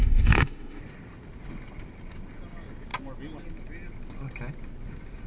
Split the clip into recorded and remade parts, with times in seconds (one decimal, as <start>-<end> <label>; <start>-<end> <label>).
0.0-0.8 remade; 0.8-5.3 recorded